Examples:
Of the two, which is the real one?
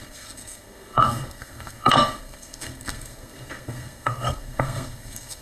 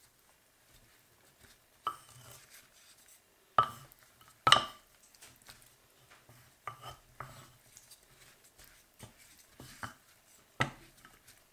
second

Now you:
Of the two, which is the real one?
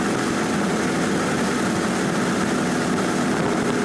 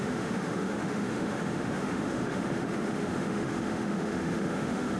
first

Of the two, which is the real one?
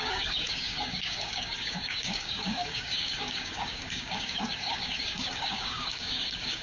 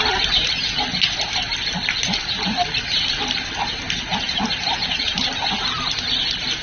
second